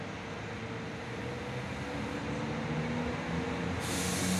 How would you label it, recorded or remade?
recorded